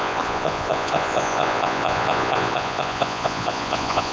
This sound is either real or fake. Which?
fake